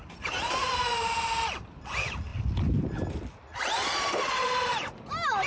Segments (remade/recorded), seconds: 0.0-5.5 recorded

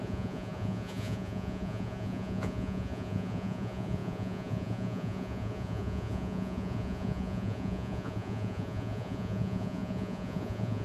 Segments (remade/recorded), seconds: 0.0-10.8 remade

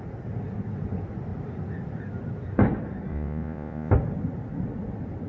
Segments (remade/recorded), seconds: 0.0-3.1 recorded; 3.1-3.9 remade; 3.9-5.3 recorded

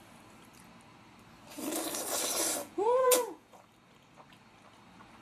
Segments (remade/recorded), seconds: 0.0-2.6 recorded; 2.6-3.6 remade; 3.6-5.2 recorded

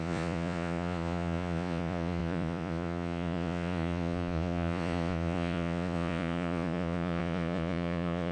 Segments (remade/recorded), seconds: 0.0-8.3 remade